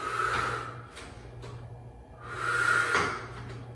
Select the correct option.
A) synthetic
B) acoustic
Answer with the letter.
B